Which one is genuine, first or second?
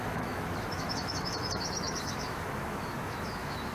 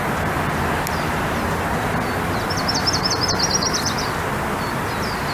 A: second